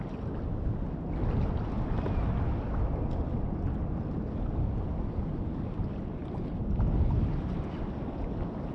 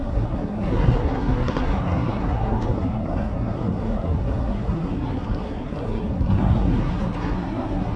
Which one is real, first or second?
first